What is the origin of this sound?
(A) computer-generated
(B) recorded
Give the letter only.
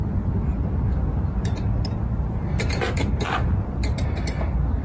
B